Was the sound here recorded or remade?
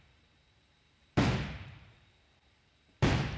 remade